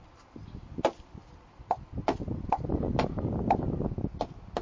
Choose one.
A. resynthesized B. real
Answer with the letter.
B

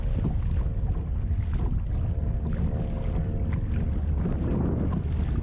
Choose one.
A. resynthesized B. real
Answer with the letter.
B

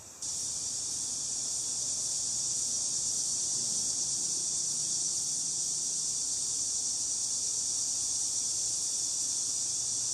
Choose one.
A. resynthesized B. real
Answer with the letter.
A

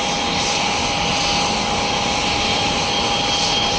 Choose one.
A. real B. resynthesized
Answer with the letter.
A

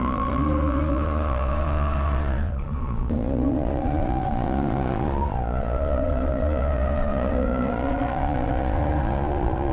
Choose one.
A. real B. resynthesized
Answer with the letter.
B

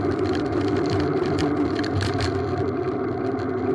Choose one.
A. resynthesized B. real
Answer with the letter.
A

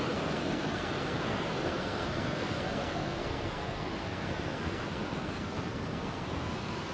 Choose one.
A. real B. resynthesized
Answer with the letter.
B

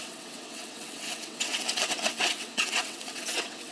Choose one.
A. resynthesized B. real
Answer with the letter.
A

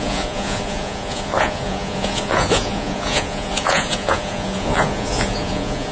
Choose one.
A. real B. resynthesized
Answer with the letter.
B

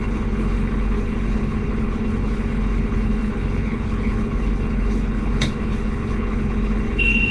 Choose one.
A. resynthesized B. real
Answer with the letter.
A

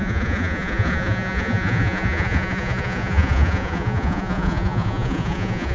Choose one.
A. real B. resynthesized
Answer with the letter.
B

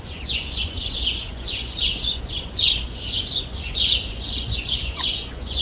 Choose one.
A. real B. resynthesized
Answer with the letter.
B